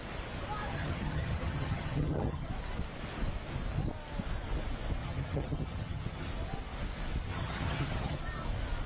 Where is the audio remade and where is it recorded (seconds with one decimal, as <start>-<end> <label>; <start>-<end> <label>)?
0.0-0.7 recorded; 0.7-2.5 remade; 2.5-5.0 recorded; 5.0-6.3 remade; 6.3-7.3 recorded; 7.3-8.2 remade; 8.2-8.9 recorded